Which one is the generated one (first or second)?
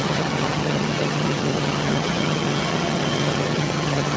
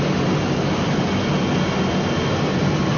first